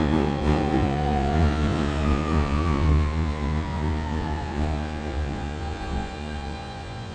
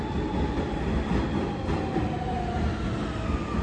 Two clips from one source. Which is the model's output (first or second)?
first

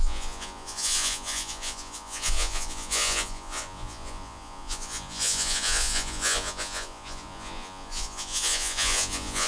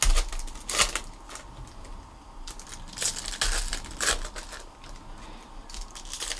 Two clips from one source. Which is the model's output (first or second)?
first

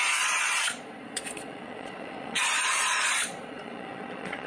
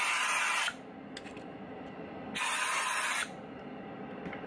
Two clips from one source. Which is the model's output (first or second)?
first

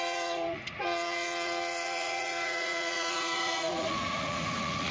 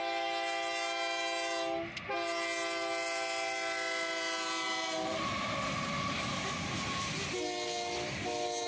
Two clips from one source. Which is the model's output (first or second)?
first